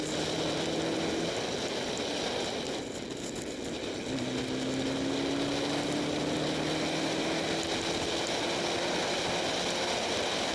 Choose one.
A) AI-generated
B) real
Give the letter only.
B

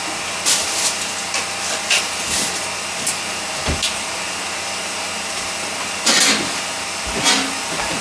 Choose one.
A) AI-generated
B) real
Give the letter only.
B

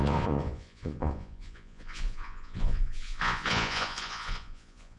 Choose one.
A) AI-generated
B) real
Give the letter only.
A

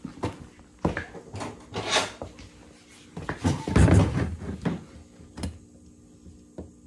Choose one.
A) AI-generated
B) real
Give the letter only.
B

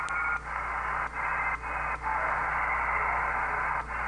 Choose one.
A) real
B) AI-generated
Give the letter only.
A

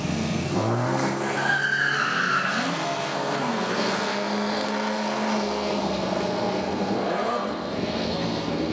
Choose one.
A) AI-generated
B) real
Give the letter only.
A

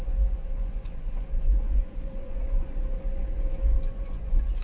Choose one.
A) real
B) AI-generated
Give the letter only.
B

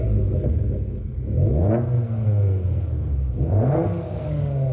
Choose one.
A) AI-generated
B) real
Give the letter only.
A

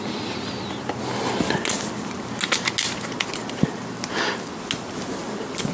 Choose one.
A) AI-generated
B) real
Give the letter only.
B